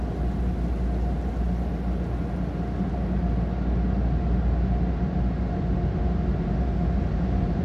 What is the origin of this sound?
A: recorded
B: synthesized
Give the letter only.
A